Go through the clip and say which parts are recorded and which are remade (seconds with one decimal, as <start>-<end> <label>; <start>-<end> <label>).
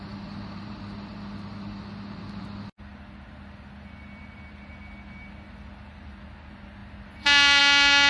0.0-8.1 recorded